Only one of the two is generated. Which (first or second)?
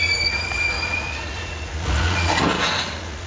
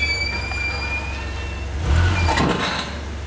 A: first